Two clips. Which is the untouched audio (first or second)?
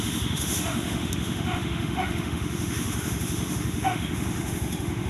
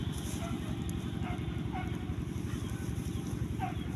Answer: second